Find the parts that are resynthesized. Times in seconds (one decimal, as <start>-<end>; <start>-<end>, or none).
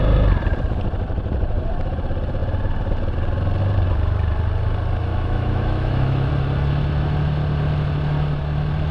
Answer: 5.1-6.3